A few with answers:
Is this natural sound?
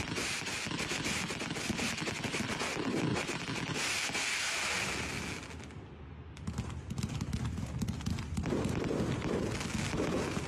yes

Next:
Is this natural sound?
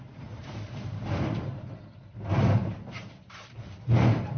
no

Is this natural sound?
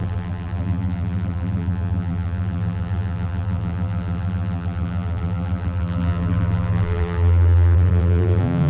no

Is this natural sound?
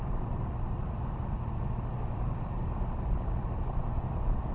no